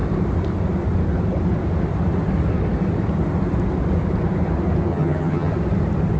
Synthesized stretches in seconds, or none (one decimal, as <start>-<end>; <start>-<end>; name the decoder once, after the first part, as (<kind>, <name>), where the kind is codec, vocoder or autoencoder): 4.9-5.5 (vocoder, HiFi-GAN)